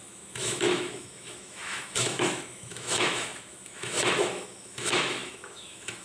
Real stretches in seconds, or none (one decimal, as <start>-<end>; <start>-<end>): none